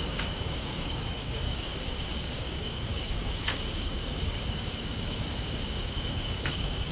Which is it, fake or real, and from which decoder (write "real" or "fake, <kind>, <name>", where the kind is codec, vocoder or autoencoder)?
fake, codec, DAC